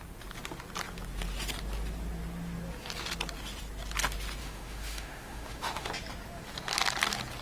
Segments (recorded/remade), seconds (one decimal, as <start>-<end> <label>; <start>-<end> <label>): 0.0-4.4 recorded; 4.4-5.9 remade; 5.9-7.4 recorded